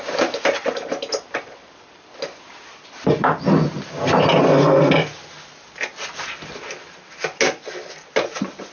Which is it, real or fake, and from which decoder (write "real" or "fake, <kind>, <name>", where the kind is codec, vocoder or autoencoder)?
real